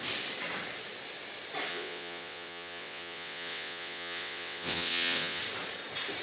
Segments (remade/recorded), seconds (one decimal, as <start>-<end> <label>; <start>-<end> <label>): 0.0-1.7 recorded; 1.7-5.4 remade; 5.4-6.2 recorded

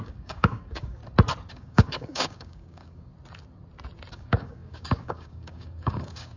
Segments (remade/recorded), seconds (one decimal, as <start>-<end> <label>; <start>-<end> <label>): 0.0-1.0 remade; 1.0-1.5 recorded; 1.5-3.1 remade; 3.1-4.1 recorded; 4.1-6.4 remade

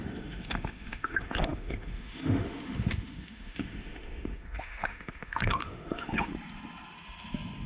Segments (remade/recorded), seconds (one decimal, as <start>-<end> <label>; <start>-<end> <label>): 0.0-6.3 remade; 6.3-7.7 recorded

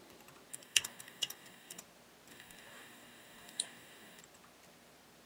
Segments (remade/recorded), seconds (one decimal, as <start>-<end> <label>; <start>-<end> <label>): 0.0-0.5 recorded; 0.5-1.8 remade; 1.8-2.3 recorded; 2.3-4.2 remade; 4.2-5.3 recorded